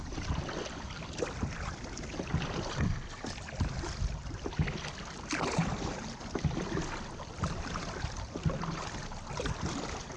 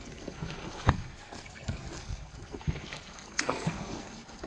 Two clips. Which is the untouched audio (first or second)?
first